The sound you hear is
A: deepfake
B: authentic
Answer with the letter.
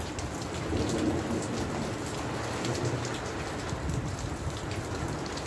B